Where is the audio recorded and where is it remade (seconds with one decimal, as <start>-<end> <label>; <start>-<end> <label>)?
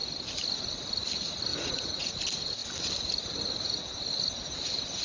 0.0-1.5 recorded; 1.5-2.1 remade; 2.1-5.0 recorded